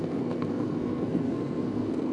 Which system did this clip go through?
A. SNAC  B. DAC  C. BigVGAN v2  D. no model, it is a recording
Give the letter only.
A